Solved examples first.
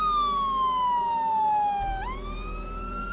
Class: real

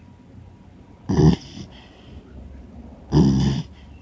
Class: fake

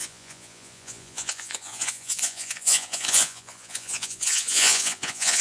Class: fake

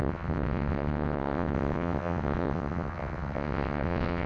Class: fake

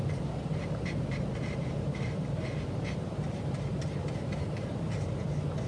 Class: fake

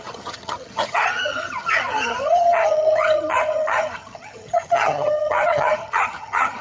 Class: fake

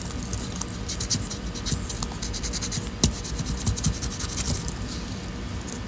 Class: real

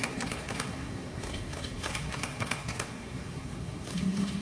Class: fake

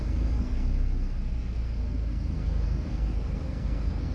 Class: fake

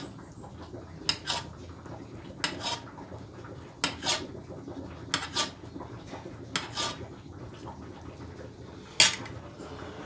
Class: real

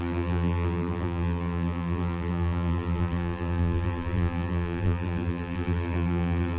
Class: fake